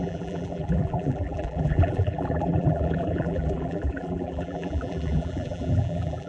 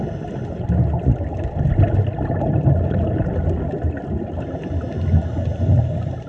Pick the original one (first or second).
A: second